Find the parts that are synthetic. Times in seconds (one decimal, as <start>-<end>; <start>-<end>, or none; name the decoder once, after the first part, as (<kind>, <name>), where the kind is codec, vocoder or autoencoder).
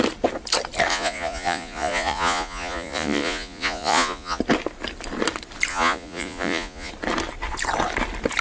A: 0.9-4.4 (vocoder, Vocos); 5.7-6.9